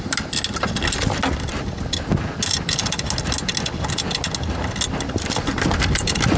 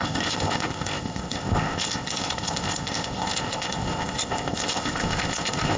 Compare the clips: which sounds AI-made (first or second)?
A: second